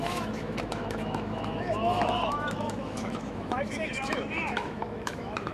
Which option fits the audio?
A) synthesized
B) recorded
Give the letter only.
A